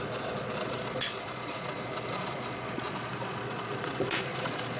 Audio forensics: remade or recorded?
remade